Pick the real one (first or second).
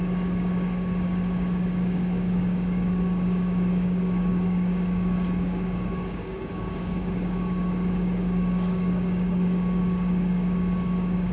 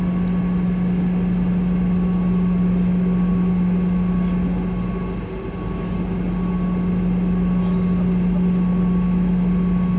second